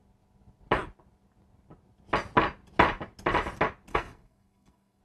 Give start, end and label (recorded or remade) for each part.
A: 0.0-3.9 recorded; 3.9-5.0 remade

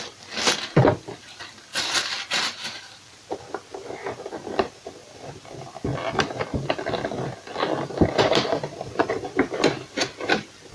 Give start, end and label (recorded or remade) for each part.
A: 0.0-1.7 recorded; 1.7-3.4 remade; 3.4-10.7 recorded

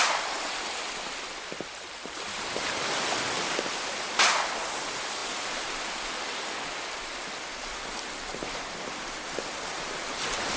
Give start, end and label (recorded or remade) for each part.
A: 0.0-10.6 recorded

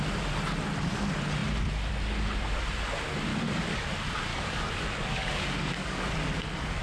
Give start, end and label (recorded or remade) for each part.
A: 0.0-3.3 recorded; 3.3-3.9 remade; 3.9-4.3 recorded; 4.3-6.1 remade; 6.1-6.8 recorded

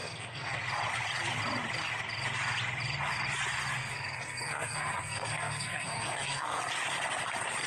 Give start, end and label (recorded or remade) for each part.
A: 0.0-0.6 remade; 0.6-3.8 recorded; 3.8-6.6 remade; 6.6-7.7 recorded

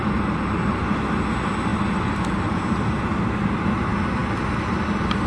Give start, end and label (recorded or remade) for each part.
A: 0.0-5.3 recorded